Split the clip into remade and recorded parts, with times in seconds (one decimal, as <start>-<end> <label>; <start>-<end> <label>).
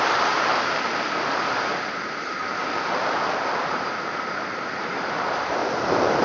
0.0-0.5 remade; 0.5-1.4 recorded; 1.4-2.6 remade; 2.6-3.6 recorded; 3.6-5.6 remade; 5.6-6.2 recorded